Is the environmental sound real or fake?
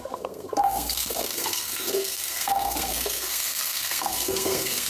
fake